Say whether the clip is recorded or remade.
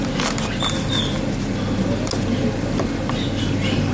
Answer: recorded